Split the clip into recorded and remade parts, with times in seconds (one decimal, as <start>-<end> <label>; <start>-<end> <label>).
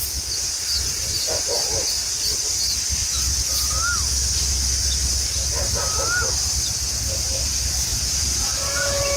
0.0-7.9 recorded; 7.9-9.2 remade